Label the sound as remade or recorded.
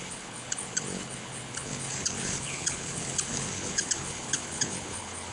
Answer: remade